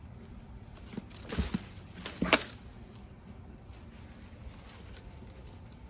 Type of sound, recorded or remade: recorded